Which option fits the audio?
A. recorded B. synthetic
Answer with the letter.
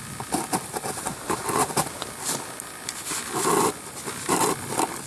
A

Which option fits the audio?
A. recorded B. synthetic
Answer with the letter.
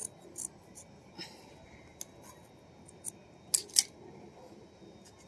A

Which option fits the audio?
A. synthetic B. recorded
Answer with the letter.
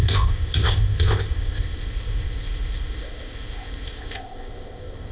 A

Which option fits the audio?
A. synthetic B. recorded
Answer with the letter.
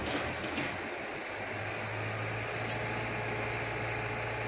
B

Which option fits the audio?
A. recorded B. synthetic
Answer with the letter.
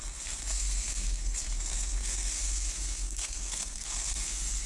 B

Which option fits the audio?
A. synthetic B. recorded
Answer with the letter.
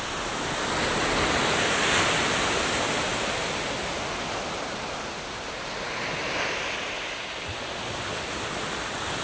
B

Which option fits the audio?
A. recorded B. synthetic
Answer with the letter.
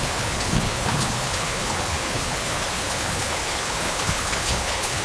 B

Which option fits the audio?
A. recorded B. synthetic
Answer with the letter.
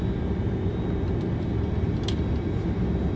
A